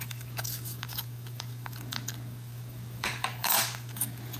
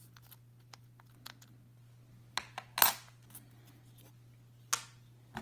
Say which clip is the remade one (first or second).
first